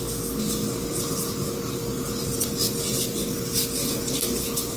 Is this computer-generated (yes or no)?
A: no